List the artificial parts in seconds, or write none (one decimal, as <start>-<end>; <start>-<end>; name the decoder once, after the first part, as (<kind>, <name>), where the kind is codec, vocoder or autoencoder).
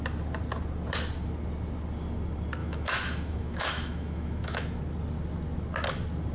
2.6-4.8 (autoencoder, DAC-VAE)